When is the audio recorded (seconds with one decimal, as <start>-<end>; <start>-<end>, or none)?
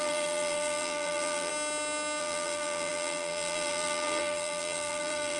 1.5-2.2